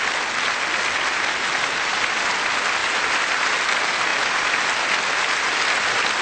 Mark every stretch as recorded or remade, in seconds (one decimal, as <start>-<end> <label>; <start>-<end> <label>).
0.0-6.2 recorded